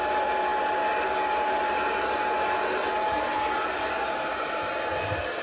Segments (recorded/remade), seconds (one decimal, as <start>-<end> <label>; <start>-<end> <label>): 0.0-5.4 recorded